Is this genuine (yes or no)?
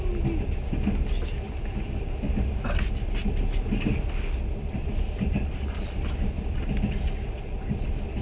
yes